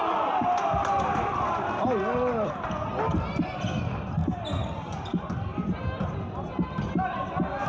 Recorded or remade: recorded